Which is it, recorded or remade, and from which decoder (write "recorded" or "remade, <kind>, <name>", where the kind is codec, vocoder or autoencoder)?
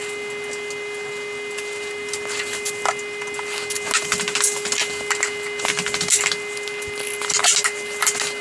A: recorded